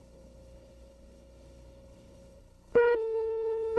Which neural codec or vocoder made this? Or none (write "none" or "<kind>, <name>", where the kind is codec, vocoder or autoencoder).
codec, HILCodec